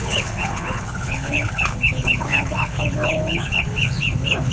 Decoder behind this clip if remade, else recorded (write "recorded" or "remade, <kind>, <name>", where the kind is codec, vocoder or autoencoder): remade, codec, HILCodec